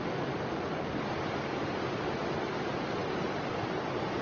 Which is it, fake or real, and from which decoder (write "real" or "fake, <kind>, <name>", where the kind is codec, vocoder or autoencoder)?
real